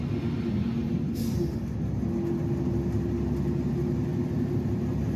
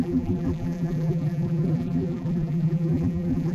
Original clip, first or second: first